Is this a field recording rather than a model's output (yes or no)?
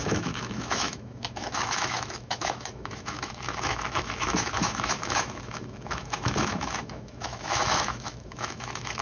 no